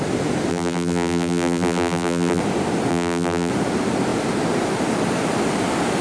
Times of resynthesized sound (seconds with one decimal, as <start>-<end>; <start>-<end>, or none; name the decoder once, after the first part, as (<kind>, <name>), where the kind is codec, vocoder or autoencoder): 0.5-2.4 (vocoder, BigVGAN v2); 2.9-3.5